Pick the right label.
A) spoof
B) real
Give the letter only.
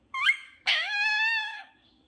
A